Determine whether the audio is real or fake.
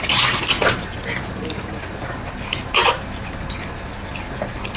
real